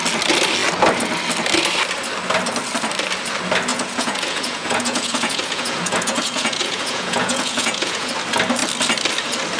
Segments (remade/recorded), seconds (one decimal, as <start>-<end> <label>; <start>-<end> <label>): 0.0-3.7 recorded; 3.7-8.1 remade; 8.1-9.6 recorded